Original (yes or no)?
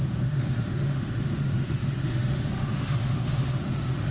no